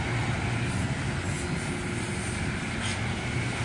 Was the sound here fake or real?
real